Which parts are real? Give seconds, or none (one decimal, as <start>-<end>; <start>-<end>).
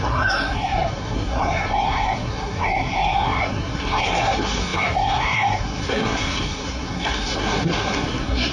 none